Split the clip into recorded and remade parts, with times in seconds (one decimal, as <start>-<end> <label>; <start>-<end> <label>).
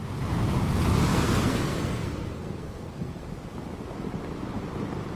0.0-1.1 recorded; 1.1-3.2 remade; 3.2-5.2 recorded